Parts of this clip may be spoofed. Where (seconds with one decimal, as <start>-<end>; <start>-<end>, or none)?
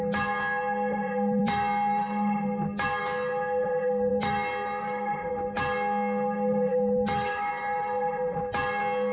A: 6.7-7.5